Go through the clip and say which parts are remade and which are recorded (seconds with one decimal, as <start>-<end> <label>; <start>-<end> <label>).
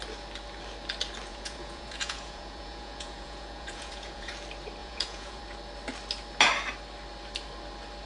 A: 0.0-1.3 recorded; 1.3-4.3 remade; 4.3-4.8 recorded; 4.8-5.4 remade; 5.4-8.1 recorded